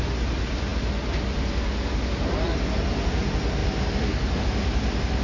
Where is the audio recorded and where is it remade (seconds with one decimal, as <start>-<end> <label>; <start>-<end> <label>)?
0.0-5.2 recorded

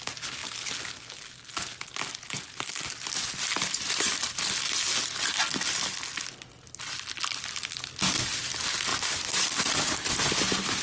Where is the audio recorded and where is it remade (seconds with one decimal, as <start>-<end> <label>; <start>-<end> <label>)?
0.0-10.8 recorded

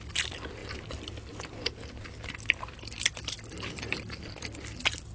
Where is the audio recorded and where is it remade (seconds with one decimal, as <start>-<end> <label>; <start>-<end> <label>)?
0.0-5.1 recorded

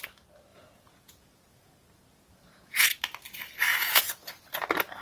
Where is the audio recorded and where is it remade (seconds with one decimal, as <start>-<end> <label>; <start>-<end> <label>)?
0.0-0.5 recorded; 0.5-3.0 remade; 3.0-3.7 recorded; 3.7-4.3 remade; 4.3-5.0 recorded

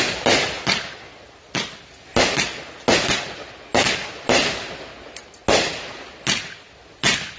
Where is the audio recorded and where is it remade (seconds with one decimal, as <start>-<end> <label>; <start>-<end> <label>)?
0.0-7.4 recorded

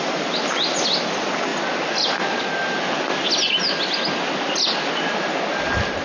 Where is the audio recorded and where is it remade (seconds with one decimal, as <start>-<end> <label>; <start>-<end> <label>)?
0.0-6.0 recorded